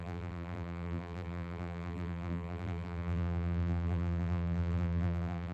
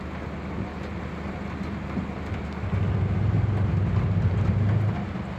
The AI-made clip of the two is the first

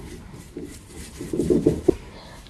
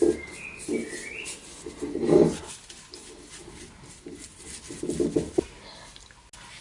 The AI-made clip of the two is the first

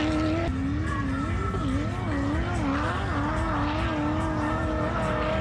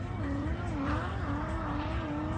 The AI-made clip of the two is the second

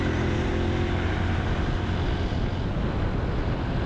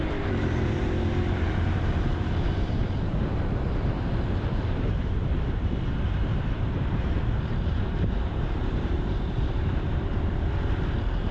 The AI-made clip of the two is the second